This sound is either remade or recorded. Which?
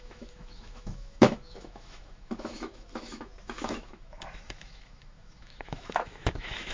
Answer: remade